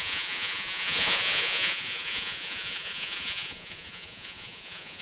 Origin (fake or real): fake